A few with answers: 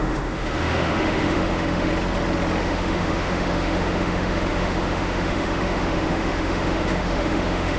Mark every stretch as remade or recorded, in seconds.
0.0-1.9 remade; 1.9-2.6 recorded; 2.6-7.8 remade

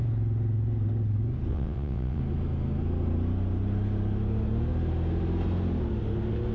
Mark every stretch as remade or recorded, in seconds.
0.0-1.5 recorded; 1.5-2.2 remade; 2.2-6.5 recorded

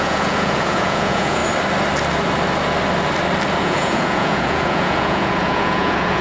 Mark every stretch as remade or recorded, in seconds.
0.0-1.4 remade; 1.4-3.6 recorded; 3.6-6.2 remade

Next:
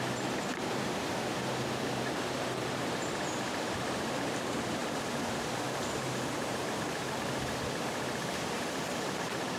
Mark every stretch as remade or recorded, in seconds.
0.0-1.3 remade; 1.3-3.2 recorded; 3.2-9.6 remade

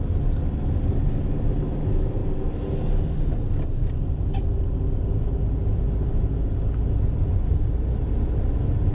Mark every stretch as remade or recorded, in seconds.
0.0-8.9 recorded

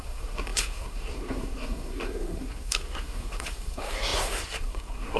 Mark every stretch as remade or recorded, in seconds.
0.0-5.2 remade

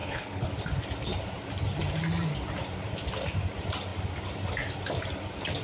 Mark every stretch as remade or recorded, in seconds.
0.0-0.5 remade; 0.5-5.6 recorded

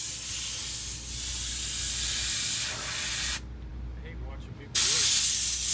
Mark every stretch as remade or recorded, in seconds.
0.0-5.7 recorded